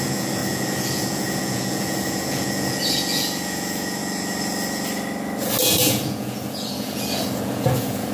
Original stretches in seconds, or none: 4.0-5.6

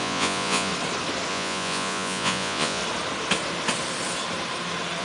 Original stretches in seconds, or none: 0.7-1.3; 2.8-5.0

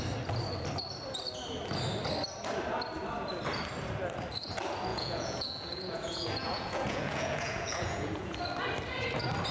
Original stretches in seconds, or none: 0.0-4.9; 8.4-9.5

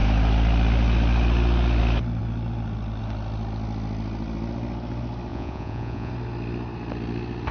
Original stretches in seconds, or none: 0.0-5.3; 6.1-7.5

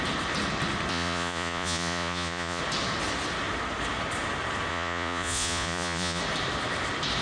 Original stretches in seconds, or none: 0.0-0.9; 2.6-4.7; 6.2-7.2